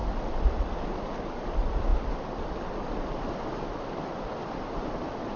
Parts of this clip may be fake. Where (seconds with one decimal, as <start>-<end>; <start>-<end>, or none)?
none